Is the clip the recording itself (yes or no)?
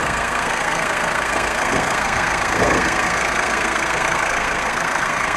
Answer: no